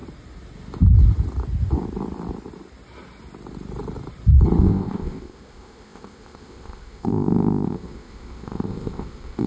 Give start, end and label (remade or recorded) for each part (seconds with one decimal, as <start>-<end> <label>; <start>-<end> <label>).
0.0-4.6 recorded; 4.6-9.5 remade